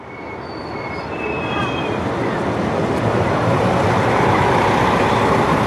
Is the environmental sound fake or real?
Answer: real